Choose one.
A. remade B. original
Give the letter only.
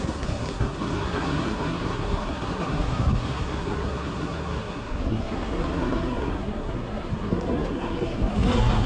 A